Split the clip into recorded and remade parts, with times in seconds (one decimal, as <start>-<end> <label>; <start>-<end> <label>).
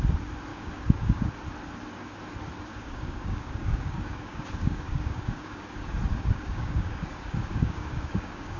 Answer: 0.0-0.5 recorded; 0.5-1.3 remade; 1.3-2.7 recorded; 2.7-5.6 remade; 5.6-6.1 recorded; 6.1-8.6 remade